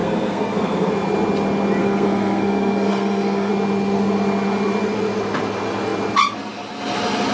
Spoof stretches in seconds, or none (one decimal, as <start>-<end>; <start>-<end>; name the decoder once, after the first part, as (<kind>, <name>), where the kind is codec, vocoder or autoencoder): 0.0-0.9 (codec, SNAC); 1.8-3.5